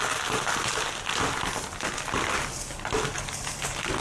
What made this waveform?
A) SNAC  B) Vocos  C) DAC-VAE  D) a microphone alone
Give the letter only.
D